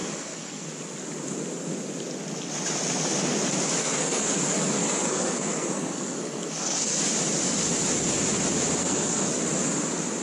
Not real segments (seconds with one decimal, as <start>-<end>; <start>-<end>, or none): 0.0-0.7; 3.8-7.0; 8.8-9.4